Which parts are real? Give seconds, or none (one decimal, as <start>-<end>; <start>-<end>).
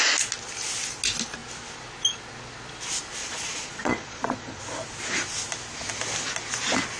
0.0-3.2; 4.6-7.0